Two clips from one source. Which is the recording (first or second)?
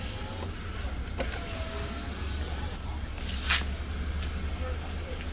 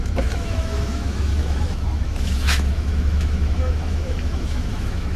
first